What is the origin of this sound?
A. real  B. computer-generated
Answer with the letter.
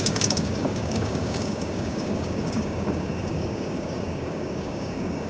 B